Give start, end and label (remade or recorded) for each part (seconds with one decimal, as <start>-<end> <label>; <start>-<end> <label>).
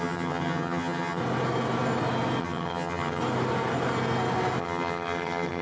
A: 0.0-1.2 remade; 1.2-2.4 recorded; 2.4-3.2 remade; 3.2-4.6 recorded; 4.6-5.6 remade